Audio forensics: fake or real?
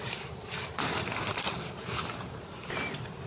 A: fake